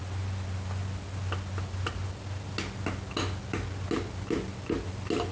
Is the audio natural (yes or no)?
yes